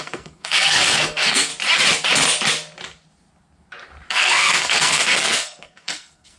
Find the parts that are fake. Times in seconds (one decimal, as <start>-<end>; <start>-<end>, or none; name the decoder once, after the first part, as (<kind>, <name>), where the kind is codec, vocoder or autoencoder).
0.0-1.5 (codec, SNAC); 4.1-6.4